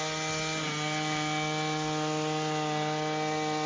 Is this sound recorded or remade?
recorded